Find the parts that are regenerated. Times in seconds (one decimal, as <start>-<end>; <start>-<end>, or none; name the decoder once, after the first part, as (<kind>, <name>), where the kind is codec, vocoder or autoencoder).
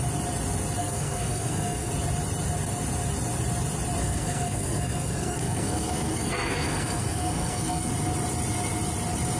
0.8-1.9 (codec, SNAC); 4.0-7.9